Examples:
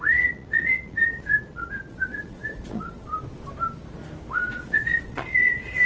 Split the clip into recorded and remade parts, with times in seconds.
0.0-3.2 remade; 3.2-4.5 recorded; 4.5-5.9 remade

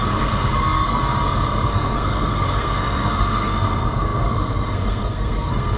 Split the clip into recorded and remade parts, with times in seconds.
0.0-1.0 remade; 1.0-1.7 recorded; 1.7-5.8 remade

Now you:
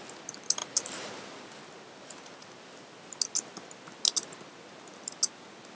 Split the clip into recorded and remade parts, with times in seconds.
0.0-5.7 recorded